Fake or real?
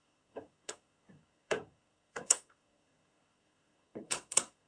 fake